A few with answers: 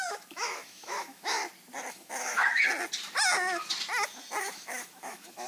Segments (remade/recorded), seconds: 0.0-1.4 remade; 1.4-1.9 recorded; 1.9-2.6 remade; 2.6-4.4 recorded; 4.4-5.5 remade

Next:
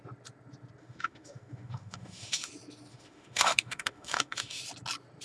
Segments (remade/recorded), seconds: 0.0-0.8 recorded; 0.8-2.5 remade; 2.5-2.9 recorded; 2.9-4.6 remade; 4.6-5.2 recorded